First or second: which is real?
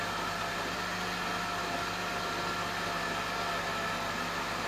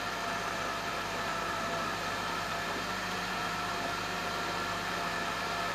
first